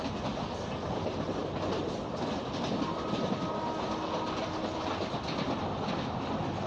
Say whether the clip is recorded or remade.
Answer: recorded